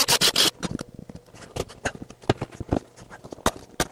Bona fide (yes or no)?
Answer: yes